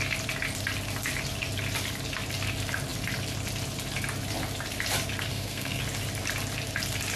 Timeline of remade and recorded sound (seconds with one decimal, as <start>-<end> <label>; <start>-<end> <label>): 0.0-5.3 recorded; 5.3-5.8 remade; 5.8-7.2 recorded